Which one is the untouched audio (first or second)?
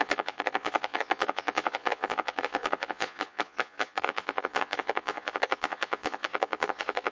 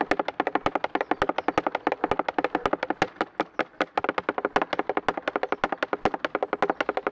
second